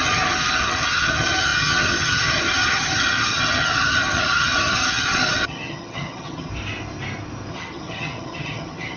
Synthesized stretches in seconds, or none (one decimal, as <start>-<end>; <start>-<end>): 0.0-6.5; 7.5-9.0